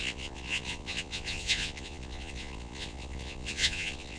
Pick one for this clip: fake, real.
fake